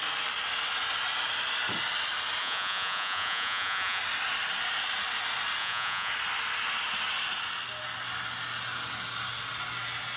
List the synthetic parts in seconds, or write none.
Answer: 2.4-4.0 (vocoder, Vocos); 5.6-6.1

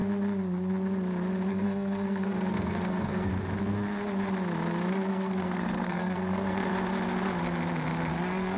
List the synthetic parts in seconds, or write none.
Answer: 1.5-3.3 (codec, SNAC); 4.9-6.7; 8.1-8.6

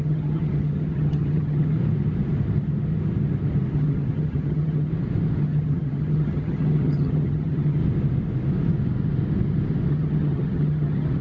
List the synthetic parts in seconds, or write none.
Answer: 0.0-1.8 (vocoder, HiFi-GAN); 3.7-4.9; 5.4-7.8; 9.9-11.2

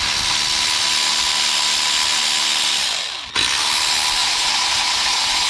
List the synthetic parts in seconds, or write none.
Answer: 4.2-5.5 (vocoder, Vocos)

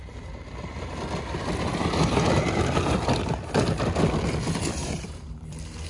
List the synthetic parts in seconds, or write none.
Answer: 4.8-5.4 (vocoder, BigVGAN v2)